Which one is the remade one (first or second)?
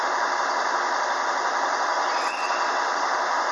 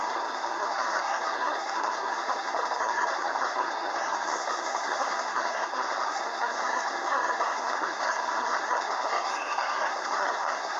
second